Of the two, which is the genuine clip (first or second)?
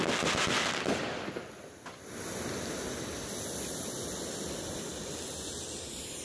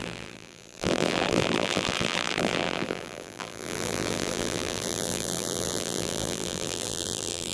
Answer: first